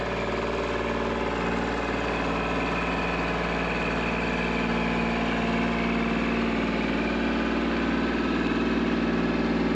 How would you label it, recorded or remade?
recorded